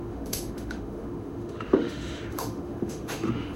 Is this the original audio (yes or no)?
no